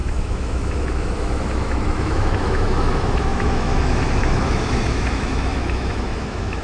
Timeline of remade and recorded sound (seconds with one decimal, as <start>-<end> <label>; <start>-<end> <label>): 0.0-6.6 remade